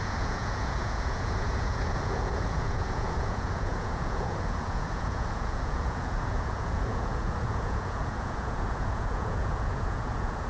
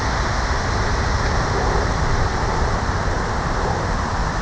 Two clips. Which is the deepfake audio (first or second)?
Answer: first